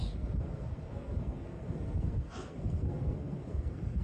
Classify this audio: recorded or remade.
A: remade